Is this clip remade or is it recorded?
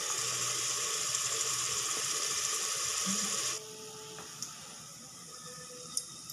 remade